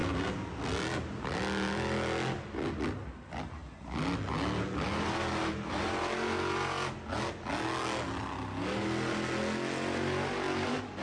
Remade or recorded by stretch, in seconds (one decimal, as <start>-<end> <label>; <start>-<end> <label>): 0.0-11.0 recorded